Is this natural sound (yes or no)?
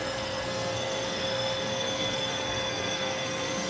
no